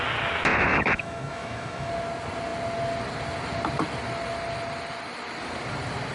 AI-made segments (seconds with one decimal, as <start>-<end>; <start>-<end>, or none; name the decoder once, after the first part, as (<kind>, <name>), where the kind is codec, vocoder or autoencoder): 0.5-1.9 (autoencoder, DAC-VAE)